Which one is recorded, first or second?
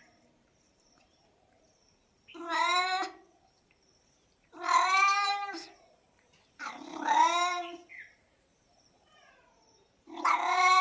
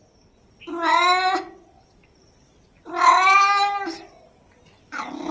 second